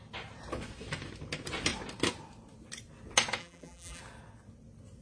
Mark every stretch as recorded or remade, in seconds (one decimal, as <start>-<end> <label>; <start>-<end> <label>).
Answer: 0.0-3.4 recorded; 3.4-4.0 remade; 4.0-5.0 recorded